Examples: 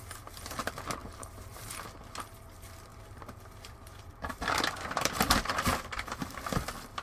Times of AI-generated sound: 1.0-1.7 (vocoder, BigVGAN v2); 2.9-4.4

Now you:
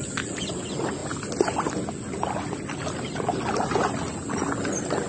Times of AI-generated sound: none

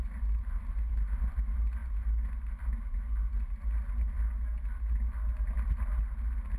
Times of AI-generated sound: none

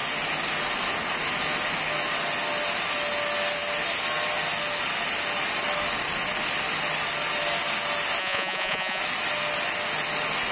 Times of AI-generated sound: 8.2-9.0 (vocoder, Vocos)

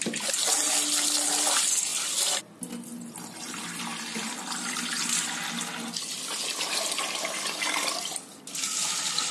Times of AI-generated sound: 1.9-2.6 (vocoder, BigVGAN v2); 3.9-4.5